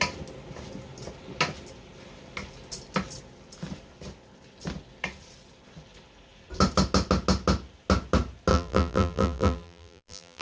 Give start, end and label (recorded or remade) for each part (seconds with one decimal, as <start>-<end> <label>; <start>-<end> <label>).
0.0-8.5 recorded; 8.5-10.4 remade